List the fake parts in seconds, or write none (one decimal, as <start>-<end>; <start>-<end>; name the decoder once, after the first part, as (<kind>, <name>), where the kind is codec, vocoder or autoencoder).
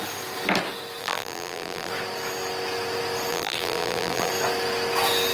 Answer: 1.0-1.9 (vocoder, BigVGAN v2); 3.3-4.3